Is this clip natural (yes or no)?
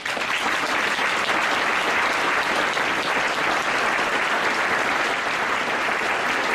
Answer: yes